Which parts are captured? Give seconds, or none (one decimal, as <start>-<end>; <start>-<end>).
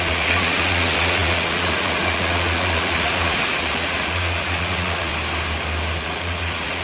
5.1-6.0